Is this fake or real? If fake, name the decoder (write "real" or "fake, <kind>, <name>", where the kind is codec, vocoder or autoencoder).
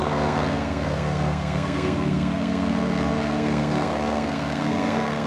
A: fake, codec, SNAC